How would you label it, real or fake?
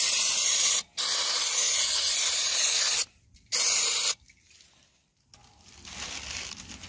real